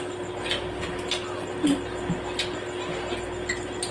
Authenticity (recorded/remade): recorded